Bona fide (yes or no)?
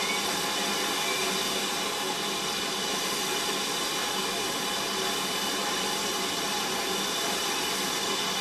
yes